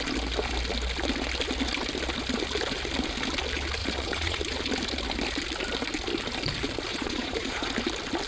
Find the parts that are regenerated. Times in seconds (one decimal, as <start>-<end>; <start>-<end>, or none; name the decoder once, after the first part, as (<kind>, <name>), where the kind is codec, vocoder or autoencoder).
3.8-4.4 (vocoder, Vocos); 6.9-7.7